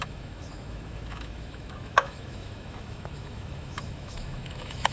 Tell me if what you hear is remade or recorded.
remade